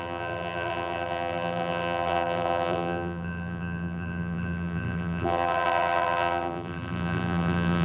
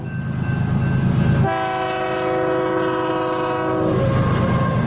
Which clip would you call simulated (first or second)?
first